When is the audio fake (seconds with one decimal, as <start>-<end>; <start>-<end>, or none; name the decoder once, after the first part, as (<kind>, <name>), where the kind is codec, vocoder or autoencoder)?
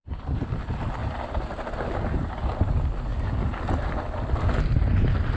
none